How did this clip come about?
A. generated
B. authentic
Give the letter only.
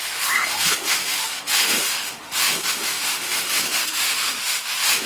A